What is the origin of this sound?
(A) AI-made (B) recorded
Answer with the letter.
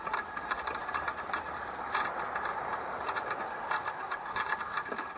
A